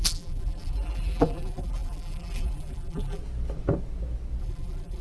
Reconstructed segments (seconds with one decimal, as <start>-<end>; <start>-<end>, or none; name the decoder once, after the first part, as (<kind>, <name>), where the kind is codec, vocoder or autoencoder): 0.0-3.2 (vocoder, BigVGAN v2); 4.4-5.0